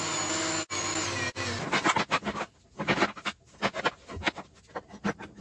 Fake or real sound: real